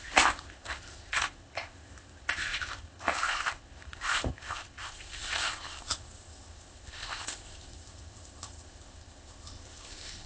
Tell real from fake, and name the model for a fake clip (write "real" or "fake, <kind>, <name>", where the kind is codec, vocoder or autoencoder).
fake, codec, ZipCodec